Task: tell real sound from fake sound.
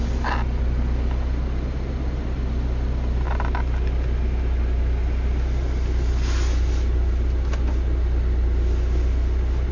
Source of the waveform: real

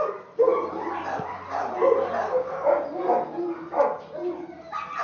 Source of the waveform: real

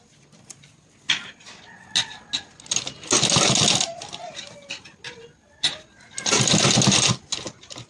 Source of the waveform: real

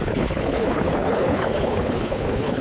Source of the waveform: fake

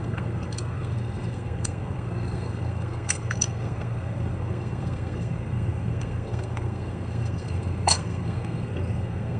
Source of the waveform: fake